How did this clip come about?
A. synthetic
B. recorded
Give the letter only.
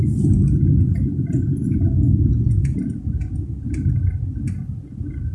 B